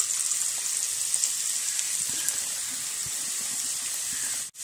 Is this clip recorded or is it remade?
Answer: recorded